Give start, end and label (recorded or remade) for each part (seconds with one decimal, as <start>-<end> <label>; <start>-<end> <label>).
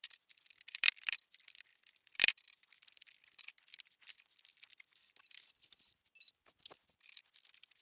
0.0-7.8 remade